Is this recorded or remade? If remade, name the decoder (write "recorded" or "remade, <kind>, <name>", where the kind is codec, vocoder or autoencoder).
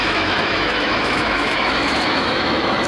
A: remade, autoencoder, DAC-VAE